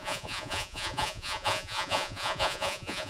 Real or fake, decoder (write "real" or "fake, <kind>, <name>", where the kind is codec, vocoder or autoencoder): fake, vocoder, Vocos